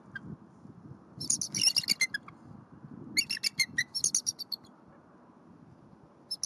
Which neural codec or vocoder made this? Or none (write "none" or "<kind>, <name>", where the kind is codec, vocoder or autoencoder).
none